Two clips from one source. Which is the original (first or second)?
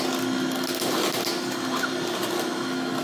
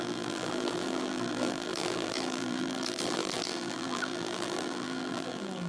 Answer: first